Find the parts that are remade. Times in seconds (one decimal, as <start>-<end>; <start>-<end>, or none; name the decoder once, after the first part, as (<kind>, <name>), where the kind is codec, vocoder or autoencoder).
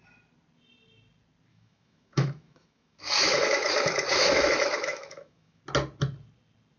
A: 1.5-5.6 (autoencoder, DAC-VAE)